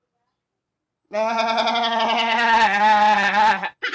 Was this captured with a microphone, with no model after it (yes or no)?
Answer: yes